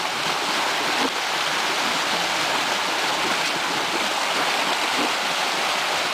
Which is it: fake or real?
real